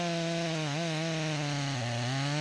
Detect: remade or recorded recorded